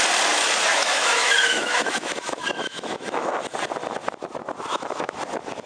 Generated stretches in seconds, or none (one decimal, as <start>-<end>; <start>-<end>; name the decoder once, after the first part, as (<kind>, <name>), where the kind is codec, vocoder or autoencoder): 0.7-3.3 (autoencoder, DAC-VAE); 4.7-5.2